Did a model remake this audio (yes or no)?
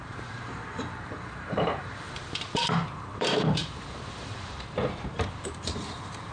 yes